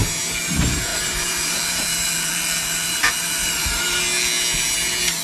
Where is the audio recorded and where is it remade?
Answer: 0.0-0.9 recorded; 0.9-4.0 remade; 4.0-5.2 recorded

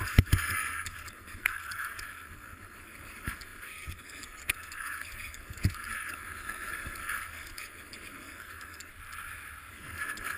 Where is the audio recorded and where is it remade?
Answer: 0.0-8.9 remade; 8.9-9.7 recorded; 9.7-10.4 remade

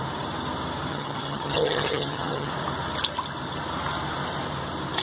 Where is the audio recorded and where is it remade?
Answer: 0.0-0.9 recorded; 0.9-2.5 remade; 2.5-5.0 recorded

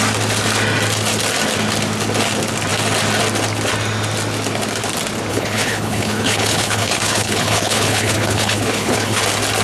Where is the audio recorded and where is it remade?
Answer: 0.0-5.3 recorded; 5.3-9.2 remade; 9.2-9.6 recorded

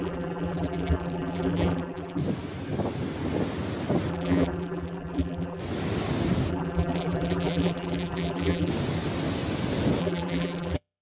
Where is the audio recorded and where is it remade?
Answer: 0.0-2.2 remade; 2.2-4.1 recorded; 4.1-5.6 remade; 5.6-6.5 recorded; 6.5-8.7 remade; 8.7-10.0 recorded; 10.0-11.0 remade